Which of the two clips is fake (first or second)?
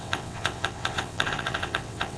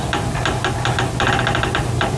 first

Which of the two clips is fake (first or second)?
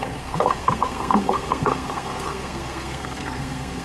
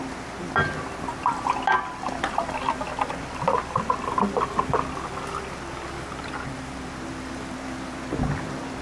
first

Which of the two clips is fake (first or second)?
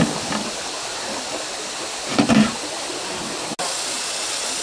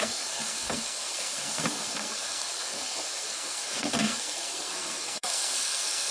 second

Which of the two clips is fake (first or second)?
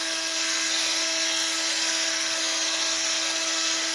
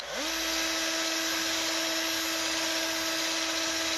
first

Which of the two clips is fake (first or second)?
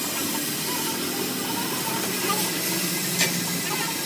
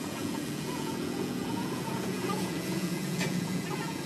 second